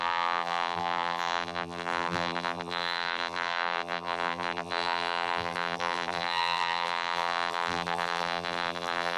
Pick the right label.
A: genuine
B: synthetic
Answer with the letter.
B